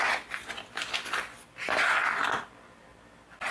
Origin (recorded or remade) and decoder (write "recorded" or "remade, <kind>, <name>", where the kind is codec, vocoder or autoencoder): recorded